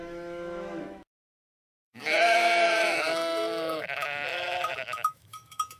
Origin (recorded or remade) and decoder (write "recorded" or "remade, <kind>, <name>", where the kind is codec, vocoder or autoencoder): remade, autoencoder, DAC-VAE